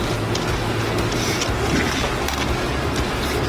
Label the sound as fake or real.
real